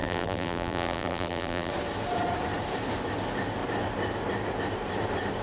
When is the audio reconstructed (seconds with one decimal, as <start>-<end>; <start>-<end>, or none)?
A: 0.0-1.7